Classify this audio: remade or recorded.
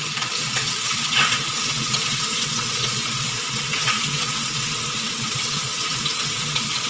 remade